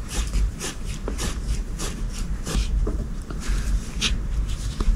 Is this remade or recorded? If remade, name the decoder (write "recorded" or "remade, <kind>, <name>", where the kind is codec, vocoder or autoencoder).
remade, vocoder, BigVGAN v2